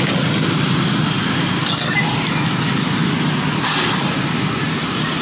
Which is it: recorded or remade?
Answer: recorded